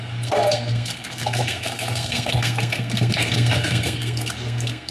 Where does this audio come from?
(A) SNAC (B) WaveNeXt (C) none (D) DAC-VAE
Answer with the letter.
A